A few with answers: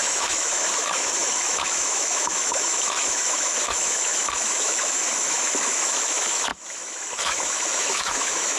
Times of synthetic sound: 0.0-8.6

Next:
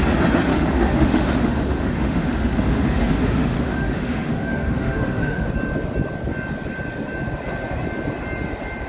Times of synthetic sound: 0.5-5.5

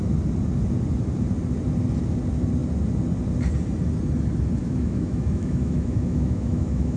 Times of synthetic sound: 4.6-7.0

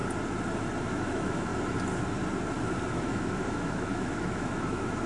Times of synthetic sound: 0.8-1.5; 2.9-5.1

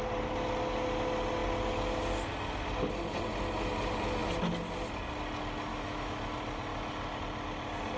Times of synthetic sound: 5.7-6.2

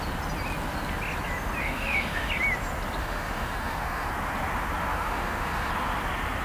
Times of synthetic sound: 1.6-2.3; 3.0-4.1; 4.9-5.7